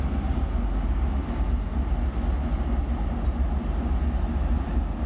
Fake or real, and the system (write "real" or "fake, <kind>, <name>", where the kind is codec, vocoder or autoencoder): real